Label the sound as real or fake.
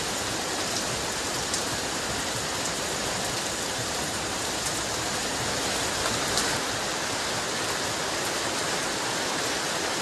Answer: real